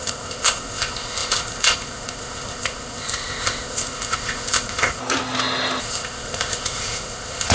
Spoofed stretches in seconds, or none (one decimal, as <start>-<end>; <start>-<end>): 0.0-5.0; 5.8-7.5